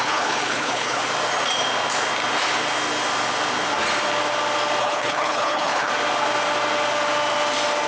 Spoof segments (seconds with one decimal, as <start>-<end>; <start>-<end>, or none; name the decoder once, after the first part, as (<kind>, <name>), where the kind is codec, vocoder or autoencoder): 0.0-1.0 (codec, HILCodec); 4.8-5.9